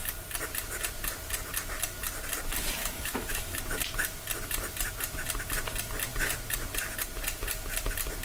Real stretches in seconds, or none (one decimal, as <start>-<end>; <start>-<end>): 0.0-2.8; 3.6-8.2

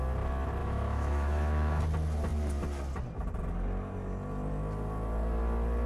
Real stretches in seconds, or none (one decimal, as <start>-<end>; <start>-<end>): 0.0-0.6; 1.8-5.9

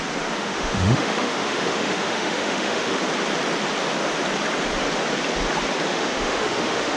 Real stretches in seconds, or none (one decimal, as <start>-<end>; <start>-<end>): 0.0-0.4; 3.0-5.9

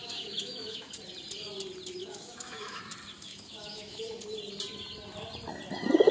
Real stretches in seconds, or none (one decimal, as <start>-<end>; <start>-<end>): 0.9-2.0; 2.8-3.3; 4.0-6.1

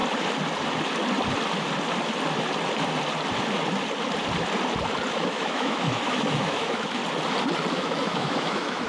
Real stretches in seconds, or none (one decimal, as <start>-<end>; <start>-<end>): 0.0-5.1; 7.0-7.7

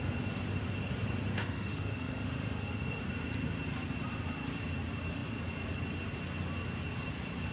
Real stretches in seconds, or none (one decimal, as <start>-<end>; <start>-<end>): 0.0-1.3; 3.0-7.5